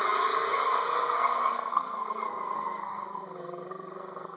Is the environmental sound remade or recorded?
remade